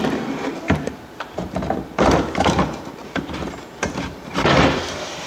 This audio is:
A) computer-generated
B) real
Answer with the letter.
A